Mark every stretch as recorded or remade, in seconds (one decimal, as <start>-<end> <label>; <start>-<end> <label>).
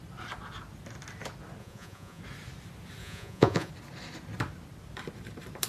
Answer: 0.0-1.6 recorded; 1.6-2.2 remade; 2.2-3.0 recorded; 3.0-3.7 remade; 3.7-5.7 recorded